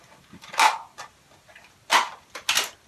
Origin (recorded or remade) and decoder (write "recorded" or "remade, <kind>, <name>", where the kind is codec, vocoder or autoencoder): recorded